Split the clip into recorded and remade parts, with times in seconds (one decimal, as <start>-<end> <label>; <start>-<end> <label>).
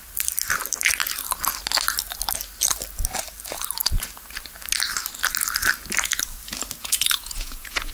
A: 0.0-6.8 recorded; 6.8-7.9 remade